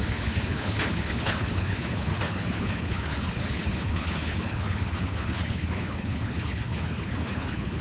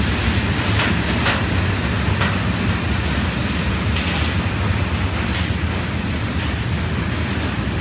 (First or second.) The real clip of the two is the second